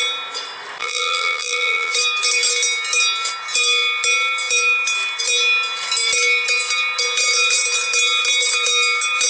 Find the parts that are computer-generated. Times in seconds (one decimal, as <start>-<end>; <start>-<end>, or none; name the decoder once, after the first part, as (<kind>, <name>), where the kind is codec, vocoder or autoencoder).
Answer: 0.8-1.9 (vocoder, BigVGAN v2)